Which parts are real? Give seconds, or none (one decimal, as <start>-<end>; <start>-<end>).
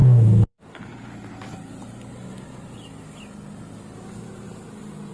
0.8-5.1